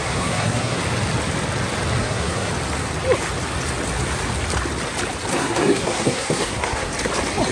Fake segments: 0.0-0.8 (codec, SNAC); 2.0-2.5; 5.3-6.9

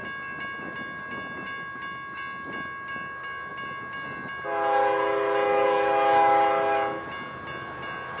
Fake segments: none

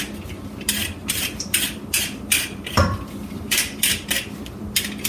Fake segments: 1.0-4.1 (vocoder, BigVGAN v2)

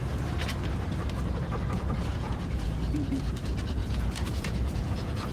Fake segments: 2.1-2.7 (vocoder, Vocos); 3.8-5.3

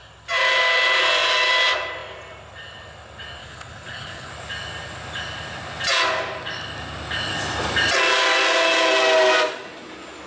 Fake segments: 3.4-4.3 (codec, HILCodec)